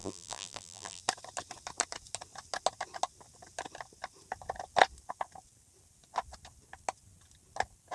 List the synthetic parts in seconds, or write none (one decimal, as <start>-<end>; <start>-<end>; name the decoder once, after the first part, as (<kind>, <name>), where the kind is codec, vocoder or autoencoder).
0.0-1.0 (vocoder, BigVGAN v2)